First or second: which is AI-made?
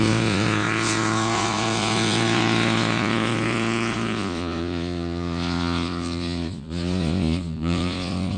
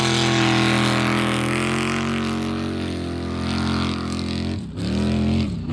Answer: first